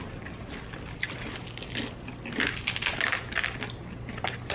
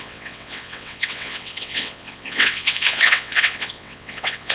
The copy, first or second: second